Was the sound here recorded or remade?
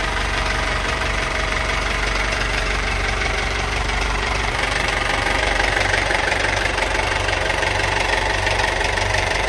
remade